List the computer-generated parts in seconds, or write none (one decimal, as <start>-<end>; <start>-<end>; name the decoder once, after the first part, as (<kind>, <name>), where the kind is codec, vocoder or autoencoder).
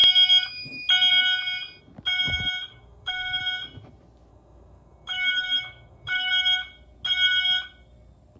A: 2.7-3.4 (autoencoder, DAC-VAE); 4.3-6.3